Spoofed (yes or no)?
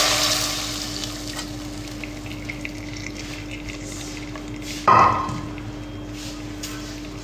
no